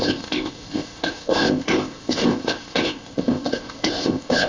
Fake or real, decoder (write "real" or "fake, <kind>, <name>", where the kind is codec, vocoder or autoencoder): fake, codec, ZipCodec